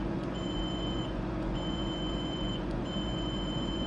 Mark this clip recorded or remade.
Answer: remade